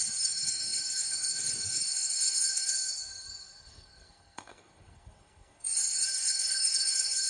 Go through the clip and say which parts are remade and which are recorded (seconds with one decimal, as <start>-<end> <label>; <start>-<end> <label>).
0.0-7.3 remade